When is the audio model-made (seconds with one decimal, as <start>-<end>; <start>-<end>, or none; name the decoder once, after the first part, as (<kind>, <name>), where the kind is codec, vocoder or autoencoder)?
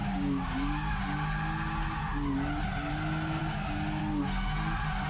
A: 0.0-1.0 (codec, DAC)